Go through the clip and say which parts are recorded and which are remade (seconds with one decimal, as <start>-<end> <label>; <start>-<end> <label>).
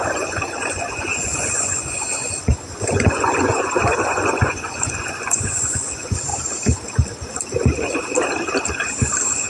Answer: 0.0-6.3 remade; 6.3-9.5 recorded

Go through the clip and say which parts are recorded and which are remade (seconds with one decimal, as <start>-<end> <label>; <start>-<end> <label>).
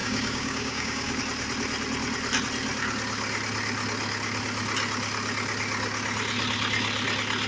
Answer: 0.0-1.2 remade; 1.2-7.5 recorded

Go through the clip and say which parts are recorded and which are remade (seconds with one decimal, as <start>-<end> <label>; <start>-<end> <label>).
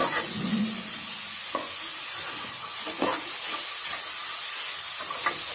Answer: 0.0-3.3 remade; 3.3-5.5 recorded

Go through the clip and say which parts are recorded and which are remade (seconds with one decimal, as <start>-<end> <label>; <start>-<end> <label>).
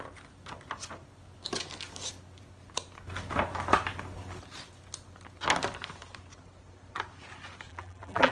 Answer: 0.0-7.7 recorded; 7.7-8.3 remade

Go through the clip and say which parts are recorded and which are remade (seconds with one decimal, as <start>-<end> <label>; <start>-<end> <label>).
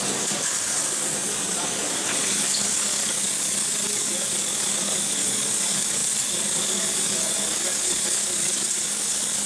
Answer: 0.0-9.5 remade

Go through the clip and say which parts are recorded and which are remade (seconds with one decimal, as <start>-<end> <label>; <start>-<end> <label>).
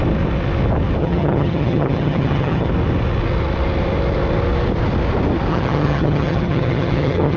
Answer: 0.0-1.0 recorded; 1.0-2.7 remade; 2.7-5.5 recorded; 5.5-7.4 remade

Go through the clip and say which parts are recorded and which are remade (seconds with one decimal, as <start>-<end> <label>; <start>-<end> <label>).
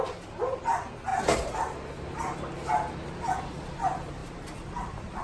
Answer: 0.0-5.2 recorded